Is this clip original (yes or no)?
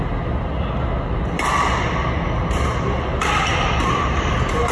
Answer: yes